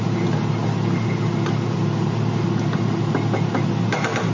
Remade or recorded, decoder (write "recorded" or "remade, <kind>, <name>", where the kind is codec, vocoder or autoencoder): recorded